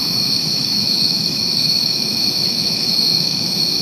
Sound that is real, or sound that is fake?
fake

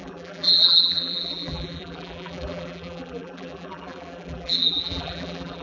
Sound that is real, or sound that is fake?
fake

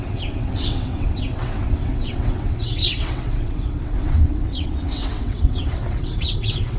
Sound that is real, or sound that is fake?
fake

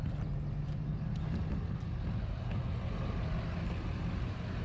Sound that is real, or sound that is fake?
real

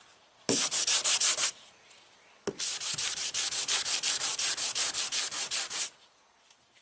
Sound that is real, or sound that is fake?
real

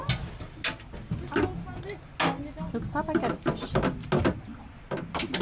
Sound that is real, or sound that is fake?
real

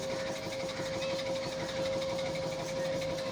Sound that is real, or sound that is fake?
real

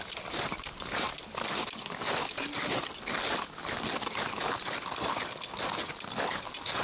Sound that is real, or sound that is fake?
real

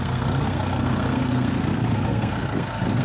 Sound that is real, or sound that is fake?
fake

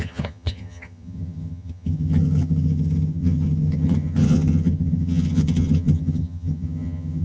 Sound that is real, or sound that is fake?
fake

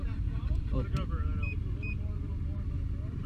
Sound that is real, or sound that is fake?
fake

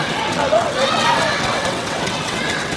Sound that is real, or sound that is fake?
fake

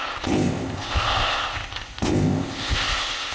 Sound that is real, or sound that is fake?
fake